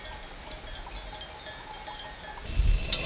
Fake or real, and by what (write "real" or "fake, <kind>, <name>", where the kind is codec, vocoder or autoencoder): real